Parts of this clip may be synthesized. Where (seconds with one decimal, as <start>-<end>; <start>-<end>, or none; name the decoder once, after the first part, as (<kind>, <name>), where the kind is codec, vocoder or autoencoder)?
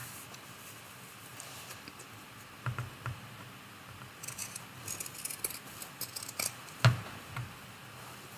none